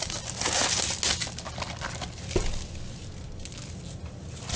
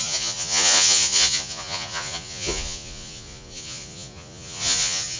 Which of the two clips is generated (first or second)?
second